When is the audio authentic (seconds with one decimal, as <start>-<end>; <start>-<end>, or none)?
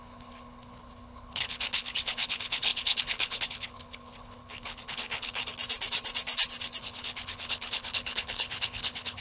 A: 5.4-6.8